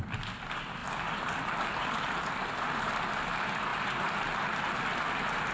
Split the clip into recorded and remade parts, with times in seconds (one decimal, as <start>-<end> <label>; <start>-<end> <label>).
0.0-5.5 recorded